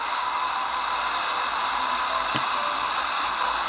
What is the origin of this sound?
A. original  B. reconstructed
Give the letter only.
A